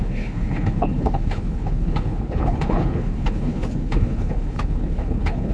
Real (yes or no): no